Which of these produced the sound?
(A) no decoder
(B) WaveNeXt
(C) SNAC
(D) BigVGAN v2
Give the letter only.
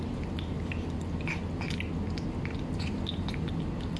A